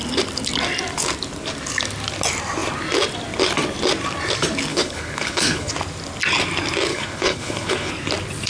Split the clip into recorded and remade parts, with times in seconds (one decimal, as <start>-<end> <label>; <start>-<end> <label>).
0.0-4.7 recorded; 4.7-5.7 remade; 5.7-6.9 recorded; 6.9-7.9 remade; 7.9-8.5 recorded

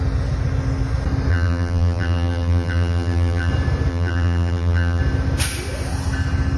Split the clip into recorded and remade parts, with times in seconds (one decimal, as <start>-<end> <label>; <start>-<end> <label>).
0.0-1.3 recorded; 1.3-3.5 remade; 3.5-3.9 recorded; 3.9-5.0 remade; 5.0-6.6 recorded

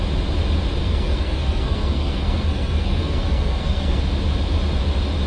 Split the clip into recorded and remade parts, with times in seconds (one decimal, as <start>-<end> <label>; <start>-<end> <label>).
0.0-0.8 recorded; 0.8-4.0 remade; 4.0-5.3 recorded

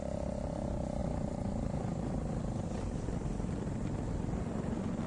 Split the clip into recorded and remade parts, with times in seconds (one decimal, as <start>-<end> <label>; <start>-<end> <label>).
0.0-1.0 recorded; 1.0-4.1 remade; 4.1-5.1 recorded

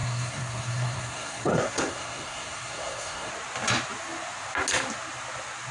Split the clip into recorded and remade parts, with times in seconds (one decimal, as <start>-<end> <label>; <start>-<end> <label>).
0.0-3.3 remade; 3.3-5.7 recorded

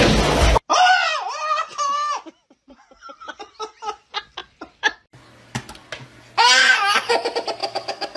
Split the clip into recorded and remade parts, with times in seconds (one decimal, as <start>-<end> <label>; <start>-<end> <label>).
0.0-7.6 recorded; 7.6-8.2 remade